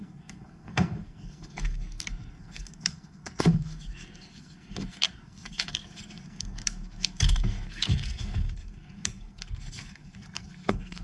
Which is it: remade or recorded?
remade